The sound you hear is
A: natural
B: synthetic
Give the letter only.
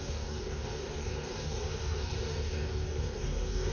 B